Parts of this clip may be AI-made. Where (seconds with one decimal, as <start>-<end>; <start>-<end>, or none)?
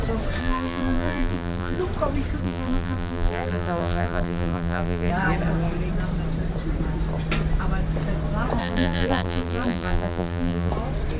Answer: 0.4-1.8; 2.4-5.1; 8.6-10.7